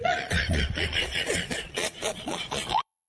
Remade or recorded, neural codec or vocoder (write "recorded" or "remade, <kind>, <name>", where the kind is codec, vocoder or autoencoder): remade, vocoder, Vocos